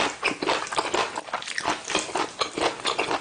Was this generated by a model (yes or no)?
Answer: no